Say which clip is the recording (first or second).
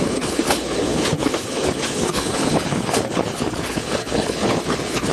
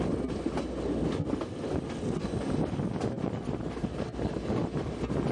second